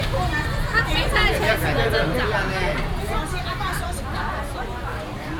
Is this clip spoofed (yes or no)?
no